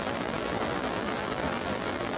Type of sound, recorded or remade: remade